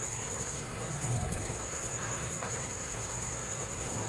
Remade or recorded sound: remade